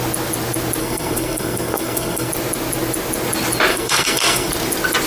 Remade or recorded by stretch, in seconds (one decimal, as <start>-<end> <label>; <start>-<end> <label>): 0.0-0.8 recorded; 0.8-2.3 remade; 2.3-3.7 recorded; 3.7-4.5 remade; 4.5-5.1 recorded